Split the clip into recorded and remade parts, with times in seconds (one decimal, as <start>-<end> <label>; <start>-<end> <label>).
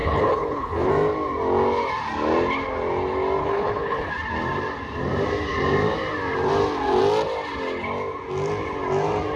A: 0.0-0.9 remade; 0.9-3.4 recorded; 3.4-4.1 remade; 4.1-9.4 recorded